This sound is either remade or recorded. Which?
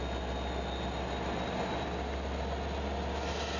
recorded